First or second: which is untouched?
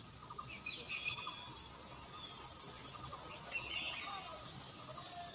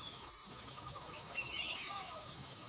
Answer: first